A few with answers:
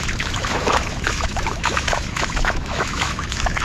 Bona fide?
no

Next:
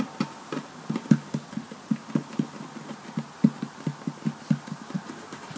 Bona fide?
yes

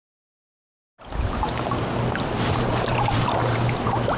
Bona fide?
yes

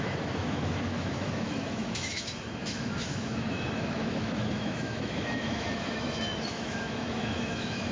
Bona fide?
no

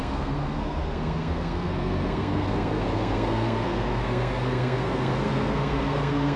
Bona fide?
no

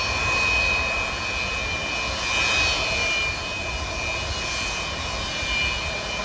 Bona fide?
yes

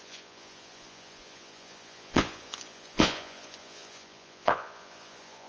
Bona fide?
no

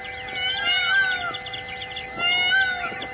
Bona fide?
yes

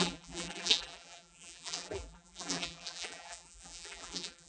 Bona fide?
no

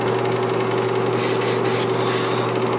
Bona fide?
yes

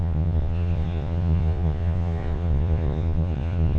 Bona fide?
no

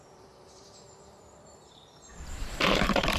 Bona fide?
no